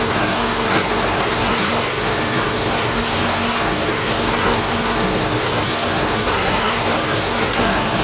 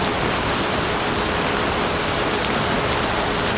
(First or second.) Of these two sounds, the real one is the second